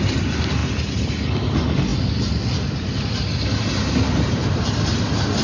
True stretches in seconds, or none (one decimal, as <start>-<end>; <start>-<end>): 0.0-5.4